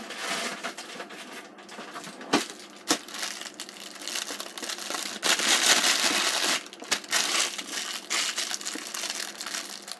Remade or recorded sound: recorded